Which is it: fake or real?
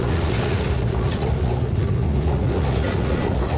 fake